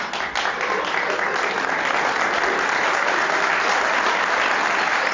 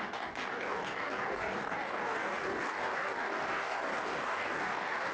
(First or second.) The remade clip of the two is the second